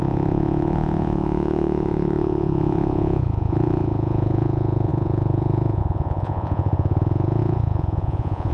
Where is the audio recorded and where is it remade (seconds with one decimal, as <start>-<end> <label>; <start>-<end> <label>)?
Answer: 0.0-8.5 remade